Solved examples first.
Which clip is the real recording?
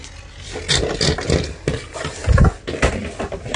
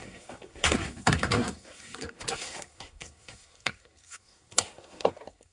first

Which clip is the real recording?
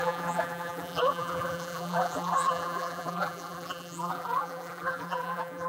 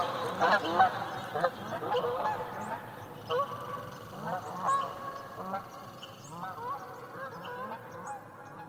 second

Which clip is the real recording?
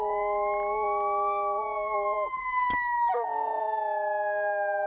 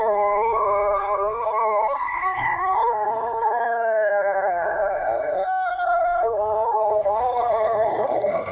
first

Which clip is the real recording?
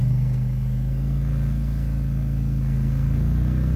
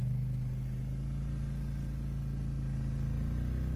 second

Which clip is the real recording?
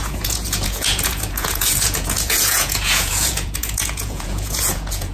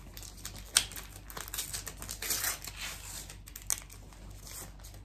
second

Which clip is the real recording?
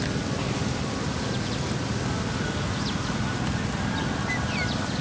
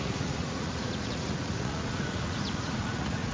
first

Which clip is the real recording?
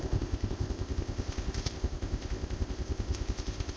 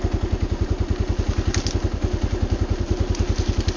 second